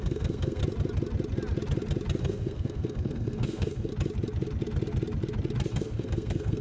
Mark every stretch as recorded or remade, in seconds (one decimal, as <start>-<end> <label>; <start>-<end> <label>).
0.0-0.6 remade; 0.6-2.2 recorded; 2.2-3.9 remade; 3.9-5.7 recorded; 5.7-6.6 remade